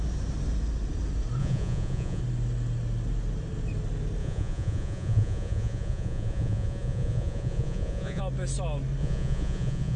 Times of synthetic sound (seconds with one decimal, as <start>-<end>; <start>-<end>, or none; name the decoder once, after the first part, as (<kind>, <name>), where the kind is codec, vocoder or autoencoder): 1.4-2.2 (vocoder, Vocos); 4.2-8.2; 9.0-10.0